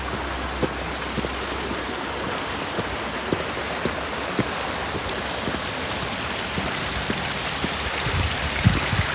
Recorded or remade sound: recorded